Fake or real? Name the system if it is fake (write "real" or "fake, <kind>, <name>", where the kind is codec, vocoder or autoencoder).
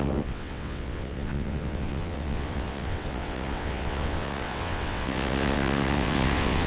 fake, vocoder, WaveNeXt